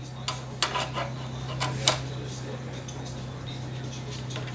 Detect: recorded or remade recorded